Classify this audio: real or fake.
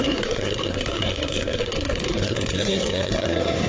fake